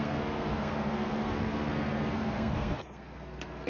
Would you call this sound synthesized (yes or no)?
yes